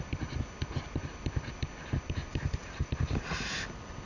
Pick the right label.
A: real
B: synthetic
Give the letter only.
B